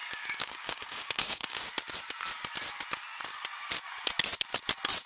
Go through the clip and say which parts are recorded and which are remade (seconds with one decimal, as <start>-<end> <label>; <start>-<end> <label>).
0.0-1.6 remade; 1.6-5.1 recorded